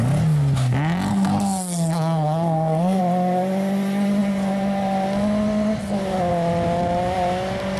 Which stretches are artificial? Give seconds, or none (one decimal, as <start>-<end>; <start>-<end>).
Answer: 1.1-3.0